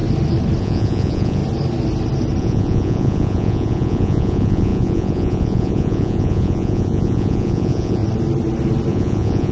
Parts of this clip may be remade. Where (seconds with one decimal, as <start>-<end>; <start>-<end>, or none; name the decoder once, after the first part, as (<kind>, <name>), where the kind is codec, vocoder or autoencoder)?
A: 0.6-1.4 (vocoder, Vocos); 2.4-8.0; 8.9-9.5